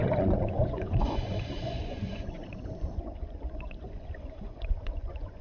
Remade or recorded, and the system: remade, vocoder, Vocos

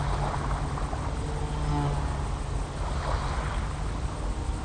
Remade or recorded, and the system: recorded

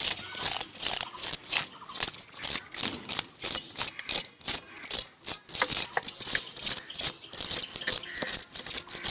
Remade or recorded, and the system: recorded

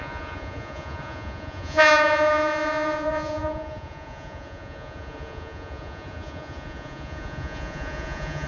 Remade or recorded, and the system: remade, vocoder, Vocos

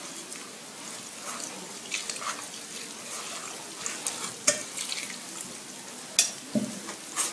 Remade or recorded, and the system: recorded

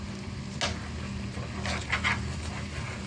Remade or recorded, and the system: recorded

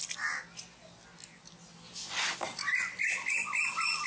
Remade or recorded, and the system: recorded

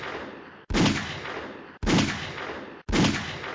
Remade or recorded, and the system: recorded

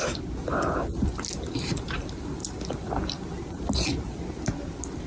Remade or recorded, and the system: recorded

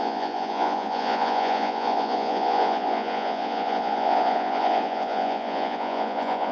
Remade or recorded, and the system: remade, vocoder, Vocos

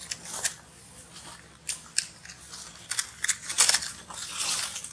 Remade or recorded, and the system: recorded